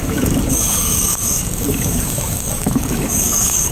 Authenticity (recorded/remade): remade